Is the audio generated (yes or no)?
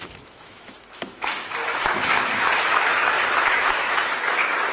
yes